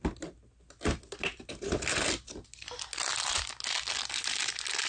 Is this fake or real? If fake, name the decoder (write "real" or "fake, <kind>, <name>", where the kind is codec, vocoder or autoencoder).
real